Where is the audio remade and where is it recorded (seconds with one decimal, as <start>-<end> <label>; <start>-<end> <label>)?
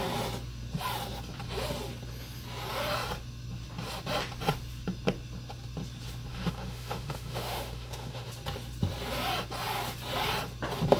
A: 0.0-6.3 recorded; 6.3-8.3 remade; 8.3-11.0 recorded